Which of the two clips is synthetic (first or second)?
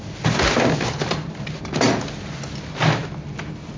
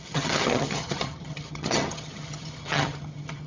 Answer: second